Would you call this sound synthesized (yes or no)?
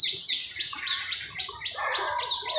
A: no